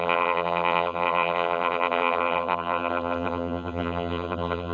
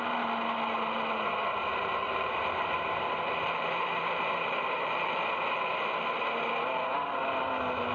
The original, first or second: second